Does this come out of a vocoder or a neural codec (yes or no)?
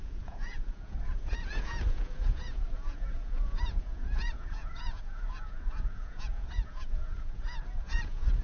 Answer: yes